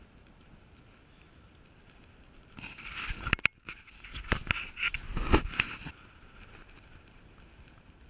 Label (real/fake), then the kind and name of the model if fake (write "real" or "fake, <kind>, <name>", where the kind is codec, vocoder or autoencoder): real